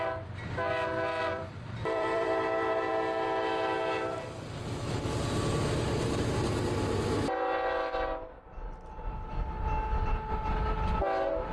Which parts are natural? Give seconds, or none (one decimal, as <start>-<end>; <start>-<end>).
0.0-1.2; 2.9-11.5